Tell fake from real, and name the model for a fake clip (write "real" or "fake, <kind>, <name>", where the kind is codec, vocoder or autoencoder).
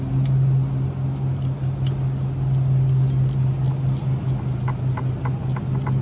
real